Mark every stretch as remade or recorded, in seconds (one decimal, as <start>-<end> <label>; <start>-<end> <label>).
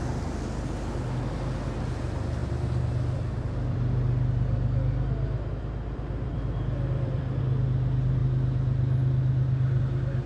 0.0-2.4 recorded; 2.4-7.4 remade; 7.4-10.3 recorded